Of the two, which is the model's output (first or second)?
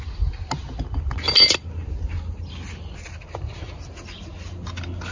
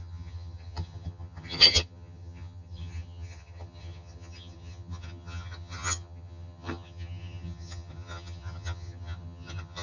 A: second